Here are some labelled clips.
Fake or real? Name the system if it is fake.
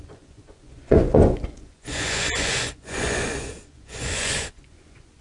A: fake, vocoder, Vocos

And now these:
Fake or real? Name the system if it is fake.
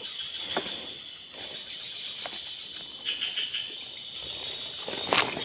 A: real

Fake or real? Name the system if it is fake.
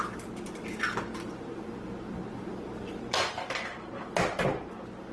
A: real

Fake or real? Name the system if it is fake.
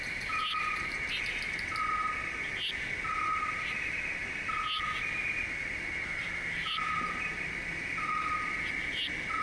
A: real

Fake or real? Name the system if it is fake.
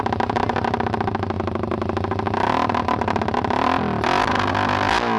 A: real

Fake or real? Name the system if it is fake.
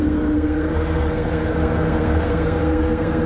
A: fake, codec, SNAC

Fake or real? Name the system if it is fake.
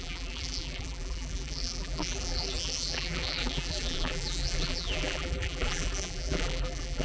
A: fake, vocoder, BigVGAN v2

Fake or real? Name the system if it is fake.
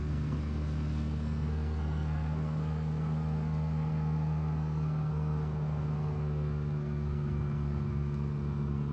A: fake, codec, SNAC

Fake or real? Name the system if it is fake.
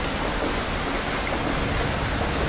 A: real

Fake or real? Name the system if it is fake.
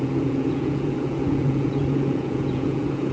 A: fake, vocoder, Vocos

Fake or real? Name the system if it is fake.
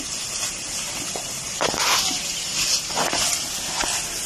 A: real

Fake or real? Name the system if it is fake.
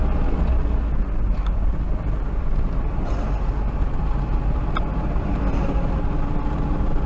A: real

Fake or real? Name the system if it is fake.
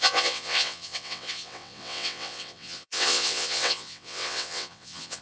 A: fake, vocoder, WaveNeXt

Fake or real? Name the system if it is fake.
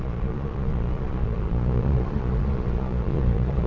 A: fake, vocoder, Vocos